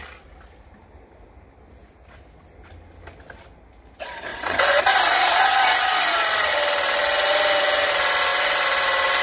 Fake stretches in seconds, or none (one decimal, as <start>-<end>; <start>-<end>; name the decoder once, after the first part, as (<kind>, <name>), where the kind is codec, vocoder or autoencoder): 4.3-4.8 (vocoder, Vocos)